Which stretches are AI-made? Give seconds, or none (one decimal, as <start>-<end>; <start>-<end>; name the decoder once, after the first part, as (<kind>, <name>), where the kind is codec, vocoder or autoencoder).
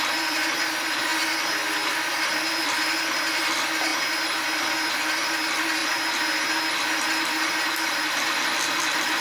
0.0-1.1 (vocoder, BigVGAN v2); 1.9-3.9; 4.9-5.8; 6.9-9.2